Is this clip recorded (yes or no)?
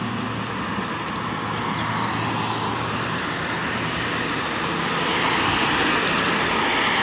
yes